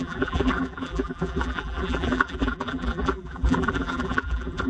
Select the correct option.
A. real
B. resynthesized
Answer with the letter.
B